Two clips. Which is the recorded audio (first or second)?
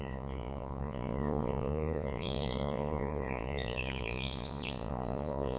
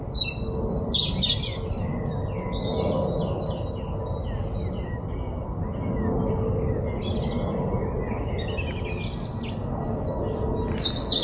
second